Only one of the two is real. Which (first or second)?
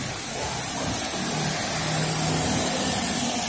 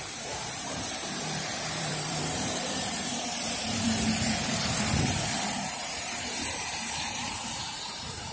first